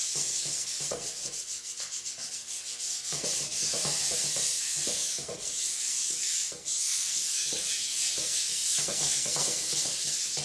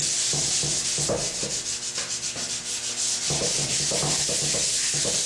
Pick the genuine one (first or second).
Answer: second